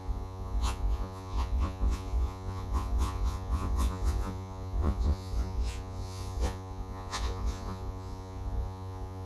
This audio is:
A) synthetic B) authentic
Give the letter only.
A